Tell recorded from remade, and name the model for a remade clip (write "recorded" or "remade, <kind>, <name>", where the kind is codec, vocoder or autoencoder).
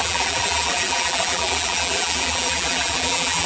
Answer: remade, vocoder, BigVGAN v2